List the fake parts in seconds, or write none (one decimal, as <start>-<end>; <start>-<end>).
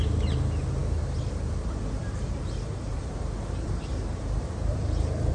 2.0-5.3